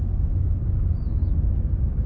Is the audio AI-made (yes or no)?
no